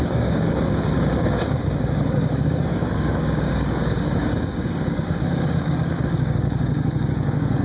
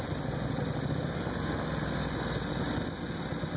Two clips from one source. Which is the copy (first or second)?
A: first